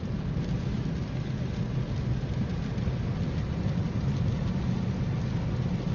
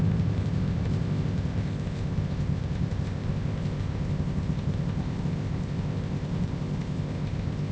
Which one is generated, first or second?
second